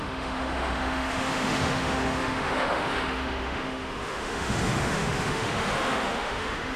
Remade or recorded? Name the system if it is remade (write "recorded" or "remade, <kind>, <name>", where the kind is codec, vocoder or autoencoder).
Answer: remade, autoencoder, DAC-VAE